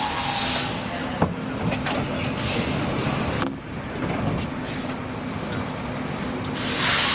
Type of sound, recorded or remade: recorded